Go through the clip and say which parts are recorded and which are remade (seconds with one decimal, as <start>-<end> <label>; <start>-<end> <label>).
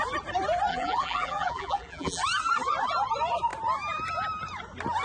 0.0-0.7 recorded; 0.7-2.2 remade; 2.2-5.0 recorded